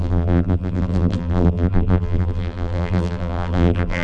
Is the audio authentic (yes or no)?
no